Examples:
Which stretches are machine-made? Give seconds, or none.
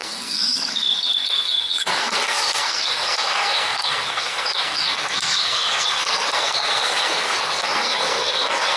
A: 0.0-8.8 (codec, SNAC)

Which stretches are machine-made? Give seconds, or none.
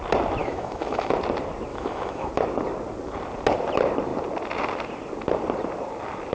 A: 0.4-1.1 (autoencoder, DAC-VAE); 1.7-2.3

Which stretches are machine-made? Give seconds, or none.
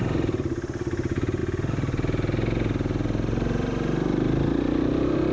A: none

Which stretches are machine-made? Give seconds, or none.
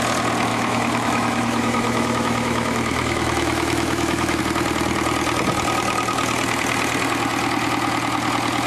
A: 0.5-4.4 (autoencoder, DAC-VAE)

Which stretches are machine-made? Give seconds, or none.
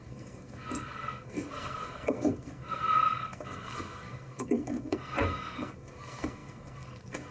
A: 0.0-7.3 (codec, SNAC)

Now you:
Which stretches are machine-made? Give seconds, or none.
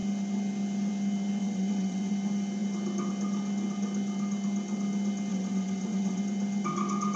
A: 1.4-2.1 (vocoder, WaveNeXt); 5.3-6.2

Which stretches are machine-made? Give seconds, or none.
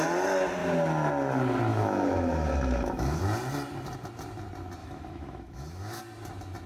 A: 1.7-3.2 (autoencoder, DAC-VAE); 4.8-6.0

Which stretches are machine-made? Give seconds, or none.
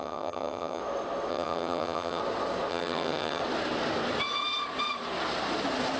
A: 0.0-0.8 (vocoder, HiFi-GAN); 1.3-2.2; 2.7-3.4